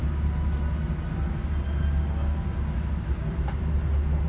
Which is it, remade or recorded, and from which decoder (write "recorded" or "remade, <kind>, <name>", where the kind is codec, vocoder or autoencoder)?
recorded